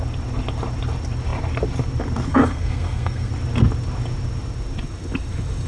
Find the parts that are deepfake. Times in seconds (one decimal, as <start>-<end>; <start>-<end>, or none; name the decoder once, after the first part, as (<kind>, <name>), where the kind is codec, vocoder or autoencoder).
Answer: 2.3-3.3 (codec, SNAC)